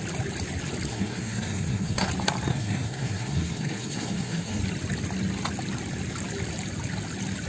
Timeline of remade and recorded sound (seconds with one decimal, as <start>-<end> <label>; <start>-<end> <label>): 0.0-0.9 recorded; 0.9-2.1 remade; 2.1-2.5 recorded; 2.5-4.6 remade; 4.6-7.5 recorded